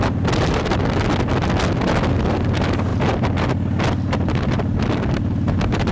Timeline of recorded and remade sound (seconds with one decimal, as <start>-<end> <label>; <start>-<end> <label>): 0.0-5.9 recorded